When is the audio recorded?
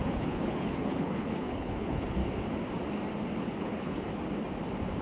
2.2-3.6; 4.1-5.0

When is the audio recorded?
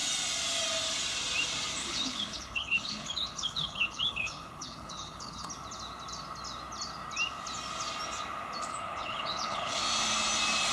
0.0-1.8; 5.5-8.7; 9.8-10.7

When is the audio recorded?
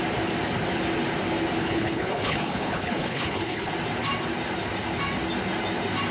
0.0-1.6; 3.7-6.1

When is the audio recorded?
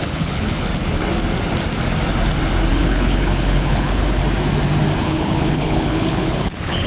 0.7-2.7; 4.2-5.0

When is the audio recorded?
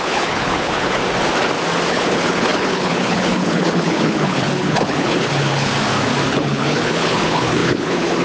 1.0-1.9; 5.7-6.3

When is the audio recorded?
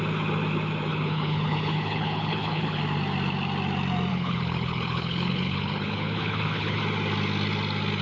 0.0-0.9; 2.8-4.1; 6.8-8.0